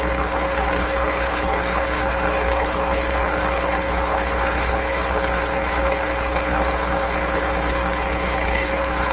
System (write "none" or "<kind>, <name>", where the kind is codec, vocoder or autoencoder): codec, HILCodec